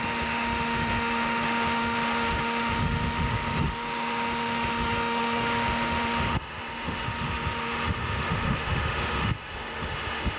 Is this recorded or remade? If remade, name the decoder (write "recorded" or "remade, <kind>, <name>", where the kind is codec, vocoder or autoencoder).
remade, autoencoder, DAC-VAE